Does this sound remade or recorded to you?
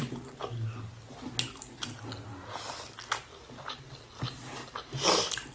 recorded